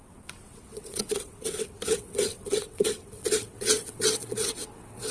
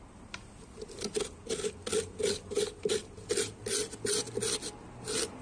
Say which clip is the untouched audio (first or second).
second